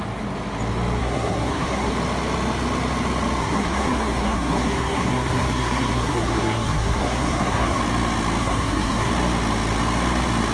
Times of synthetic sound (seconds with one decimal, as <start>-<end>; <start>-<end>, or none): 1.0-1.9; 3.4-7.8; 8.4-9.1